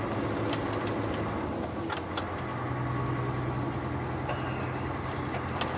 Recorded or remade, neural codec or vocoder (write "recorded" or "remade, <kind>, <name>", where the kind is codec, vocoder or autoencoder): recorded